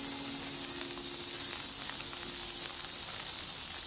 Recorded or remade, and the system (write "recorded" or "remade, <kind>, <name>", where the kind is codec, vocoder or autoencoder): recorded